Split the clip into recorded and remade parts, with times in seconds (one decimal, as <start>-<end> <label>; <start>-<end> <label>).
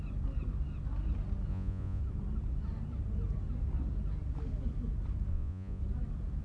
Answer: 0.0-1.5 recorded; 1.5-2.0 remade; 2.0-5.3 recorded; 5.3-5.8 remade; 5.8-6.4 recorded